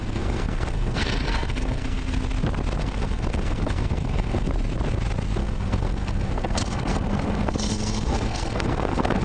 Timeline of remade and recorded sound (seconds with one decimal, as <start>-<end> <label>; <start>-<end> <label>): 0.0-2.2 remade; 2.2-2.8 recorded; 2.8-4.5 remade; 4.5-5.4 recorded; 5.4-9.2 remade